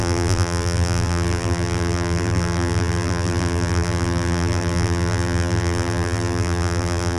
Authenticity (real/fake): fake